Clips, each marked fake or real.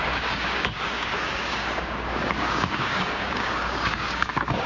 fake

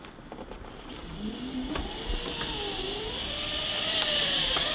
real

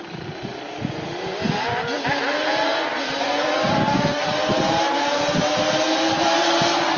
real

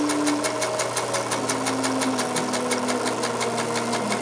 real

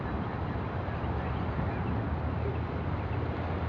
real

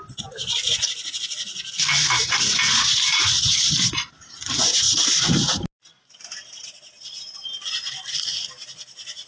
real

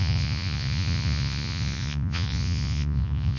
fake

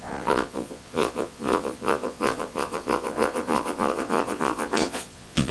fake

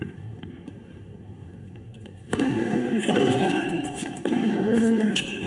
fake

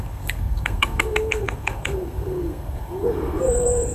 fake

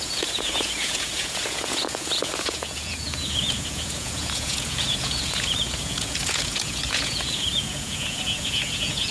fake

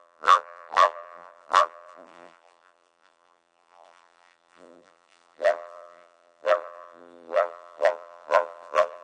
fake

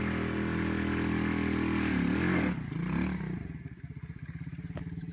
real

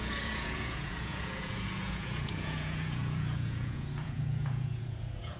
fake